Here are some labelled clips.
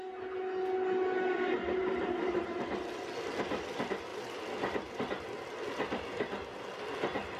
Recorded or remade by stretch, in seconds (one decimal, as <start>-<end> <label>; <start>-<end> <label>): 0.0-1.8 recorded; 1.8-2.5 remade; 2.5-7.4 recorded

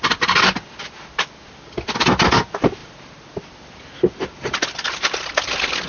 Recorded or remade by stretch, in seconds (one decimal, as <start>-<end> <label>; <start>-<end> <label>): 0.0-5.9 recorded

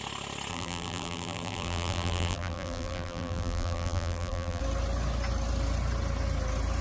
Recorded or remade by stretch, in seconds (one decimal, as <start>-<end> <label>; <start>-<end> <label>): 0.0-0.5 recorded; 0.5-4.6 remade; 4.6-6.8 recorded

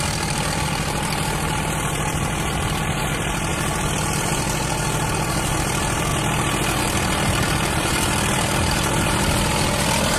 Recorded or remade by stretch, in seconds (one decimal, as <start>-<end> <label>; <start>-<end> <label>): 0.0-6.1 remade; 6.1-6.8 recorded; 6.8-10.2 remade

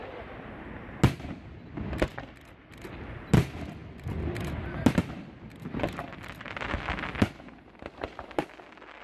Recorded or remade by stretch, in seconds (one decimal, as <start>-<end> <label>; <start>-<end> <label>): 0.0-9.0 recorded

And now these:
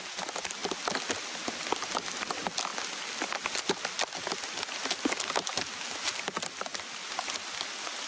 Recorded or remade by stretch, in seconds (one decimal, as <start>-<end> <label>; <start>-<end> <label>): 0.0-8.1 recorded

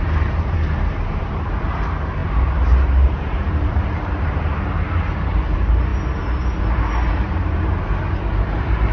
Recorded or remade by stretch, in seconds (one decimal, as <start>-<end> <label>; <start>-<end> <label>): 0.0-5.9 remade; 5.9-6.6 recorded; 6.6-8.9 remade